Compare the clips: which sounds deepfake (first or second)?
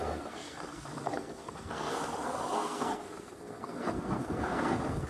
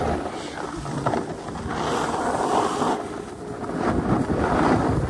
first